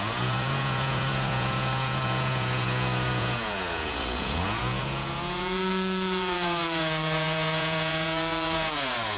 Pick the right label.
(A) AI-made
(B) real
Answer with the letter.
A